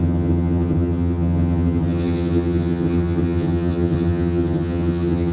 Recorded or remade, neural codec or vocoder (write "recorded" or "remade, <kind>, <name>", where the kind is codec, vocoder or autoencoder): remade, vocoder, HiFi-GAN